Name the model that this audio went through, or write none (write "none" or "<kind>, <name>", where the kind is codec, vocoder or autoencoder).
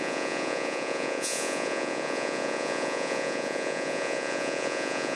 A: vocoder, Vocos